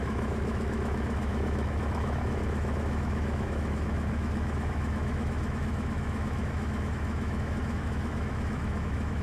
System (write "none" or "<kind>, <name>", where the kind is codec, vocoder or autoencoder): autoencoder, DAC-VAE